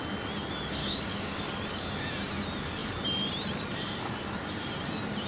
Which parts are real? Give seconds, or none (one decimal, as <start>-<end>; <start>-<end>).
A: 0.0-0.8; 1.4-5.3